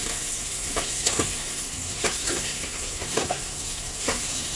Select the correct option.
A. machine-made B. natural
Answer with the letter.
A